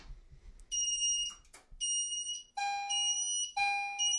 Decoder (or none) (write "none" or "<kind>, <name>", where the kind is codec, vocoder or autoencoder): none